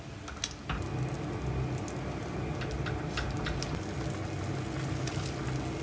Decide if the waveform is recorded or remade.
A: recorded